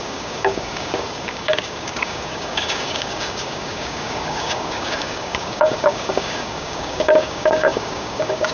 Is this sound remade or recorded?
remade